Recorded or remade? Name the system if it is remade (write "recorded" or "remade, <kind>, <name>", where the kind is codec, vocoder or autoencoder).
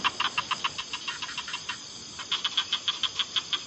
recorded